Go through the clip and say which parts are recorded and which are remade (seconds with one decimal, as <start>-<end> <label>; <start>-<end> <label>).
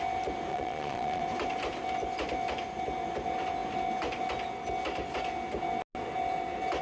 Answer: 0.0-0.5 recorded; 0.5-1.2 remade; 1.2-6.8 recorded